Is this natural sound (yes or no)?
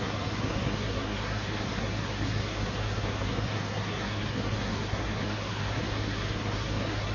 no